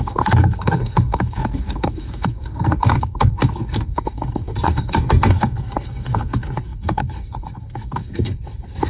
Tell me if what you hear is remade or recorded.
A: remade